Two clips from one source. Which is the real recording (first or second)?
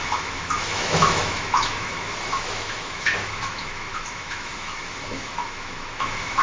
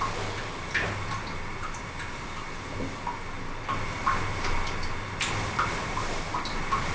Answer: second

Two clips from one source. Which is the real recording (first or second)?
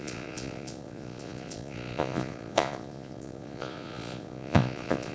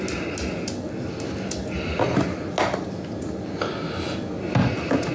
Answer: second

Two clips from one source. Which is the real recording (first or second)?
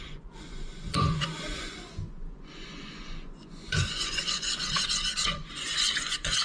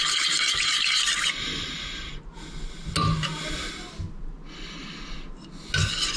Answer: second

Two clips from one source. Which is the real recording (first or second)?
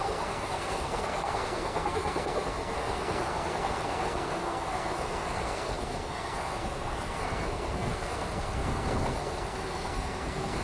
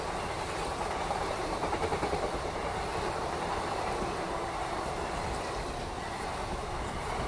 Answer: second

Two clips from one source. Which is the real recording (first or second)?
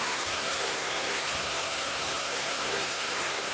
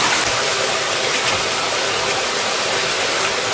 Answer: second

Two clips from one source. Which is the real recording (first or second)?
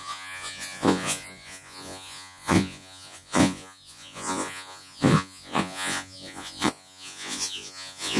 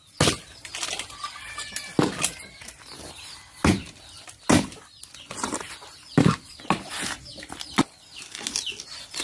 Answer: second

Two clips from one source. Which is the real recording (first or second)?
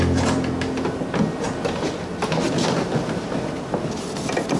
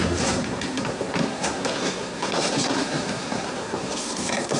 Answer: first